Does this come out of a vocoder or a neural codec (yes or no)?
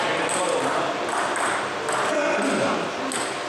no